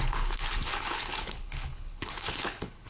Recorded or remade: remade